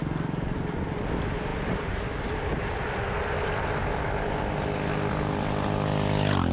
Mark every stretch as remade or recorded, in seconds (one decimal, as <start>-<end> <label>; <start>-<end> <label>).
0.0-6.5 recorded